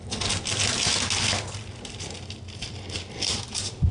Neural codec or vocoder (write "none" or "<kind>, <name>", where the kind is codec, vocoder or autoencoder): none